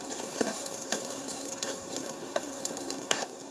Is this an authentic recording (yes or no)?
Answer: no